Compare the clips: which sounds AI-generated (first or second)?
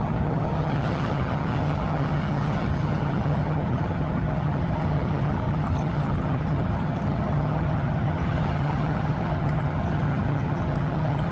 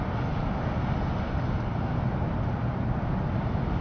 first